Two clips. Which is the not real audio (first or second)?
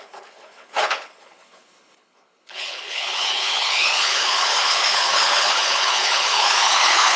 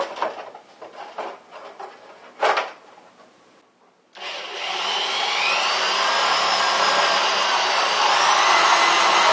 first